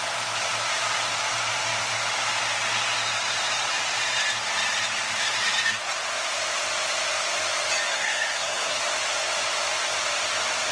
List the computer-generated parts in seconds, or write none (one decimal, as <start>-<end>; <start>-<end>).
7.9-8.8